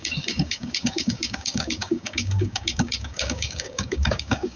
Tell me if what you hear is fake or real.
fake